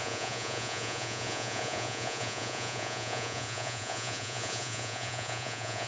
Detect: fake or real fake